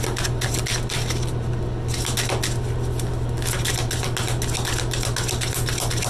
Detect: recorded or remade recorded